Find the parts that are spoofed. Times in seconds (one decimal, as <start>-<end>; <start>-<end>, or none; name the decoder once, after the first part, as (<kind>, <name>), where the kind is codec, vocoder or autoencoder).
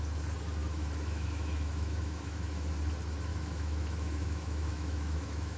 0.6-2.7 (autoencoder, DAC-VAE); 3.3-5.6